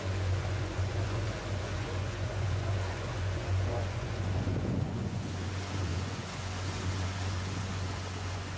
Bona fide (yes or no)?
no